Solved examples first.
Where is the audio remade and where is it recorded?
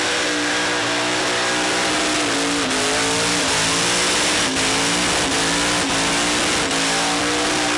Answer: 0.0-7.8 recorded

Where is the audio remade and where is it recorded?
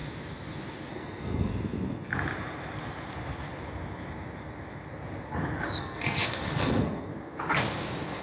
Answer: 0.0-0.9 recorded; 0.9-1.5 remade; 1.5-5.8 recorded; 5.8-7.1 remade; 7.1-8.2 recorded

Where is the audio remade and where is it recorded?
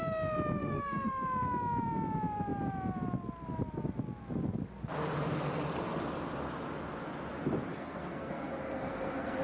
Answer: 0.0-0.6 recorded; 0.6-1.1 remade; 1.1-7.7 recorded; 7.7-9.4 remade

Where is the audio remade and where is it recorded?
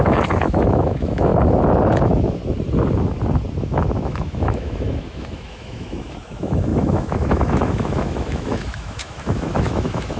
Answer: 0.0-1.3 remade; 1.3-2.0 recorded; 2.0-2.4 remade; 2.4-3.6 recorded; 3.6-10.2 remade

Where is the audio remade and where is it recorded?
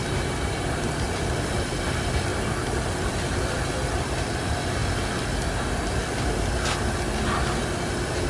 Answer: 0.0-8.3 recorded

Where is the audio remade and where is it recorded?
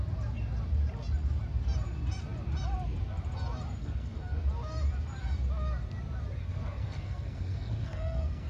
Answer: 0.0-3.8 recorded; 3.8-4.4 remade; 4.4-6.4 recorded; 6.4-8.5 remade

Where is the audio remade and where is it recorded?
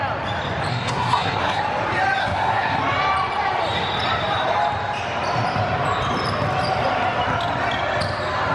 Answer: 0.0-0.7 recorded; 0.7-1.6 remade; 1.6-2.2 recorded; 2.2-2.8 remade; 2.8-8.5 recorded